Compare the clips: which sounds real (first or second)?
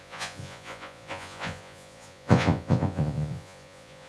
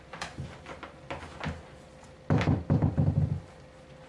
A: second